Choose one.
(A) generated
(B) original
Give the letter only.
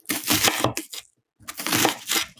B